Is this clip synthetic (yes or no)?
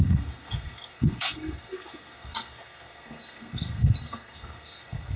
yes